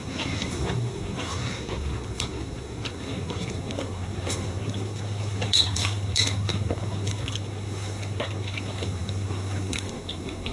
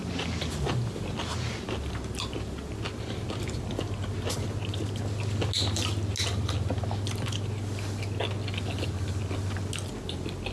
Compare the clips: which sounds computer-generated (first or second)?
first